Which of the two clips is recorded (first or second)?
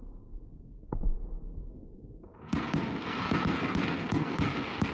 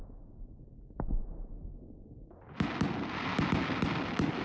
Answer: second